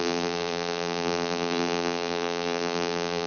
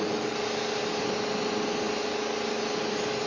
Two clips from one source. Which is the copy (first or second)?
first